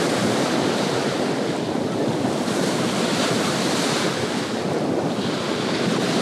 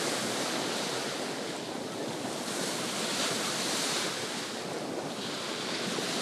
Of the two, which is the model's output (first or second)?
first